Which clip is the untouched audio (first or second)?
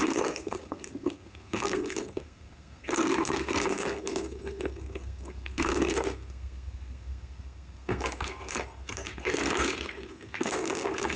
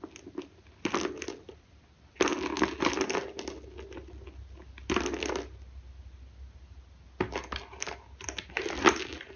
second